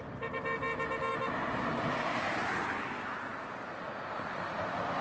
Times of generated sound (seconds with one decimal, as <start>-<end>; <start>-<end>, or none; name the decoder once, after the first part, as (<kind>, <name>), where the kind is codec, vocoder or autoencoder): none